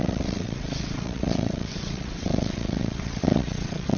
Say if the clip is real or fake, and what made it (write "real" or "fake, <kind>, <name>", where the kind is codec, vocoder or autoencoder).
fake, vocoder, WaveNeXt